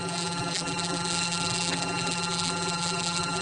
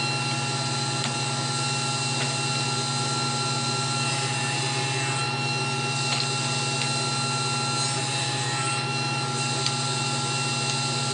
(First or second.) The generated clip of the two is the first